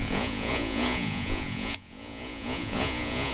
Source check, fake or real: fake